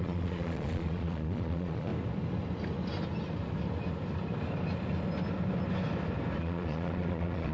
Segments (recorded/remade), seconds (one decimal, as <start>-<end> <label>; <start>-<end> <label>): 0.0-1.9 remade; 1.9-6.4 recorded; 6.4-7.5 remade